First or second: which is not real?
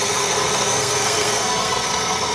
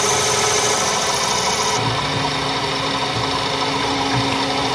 first